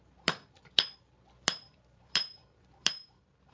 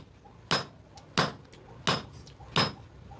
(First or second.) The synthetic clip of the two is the first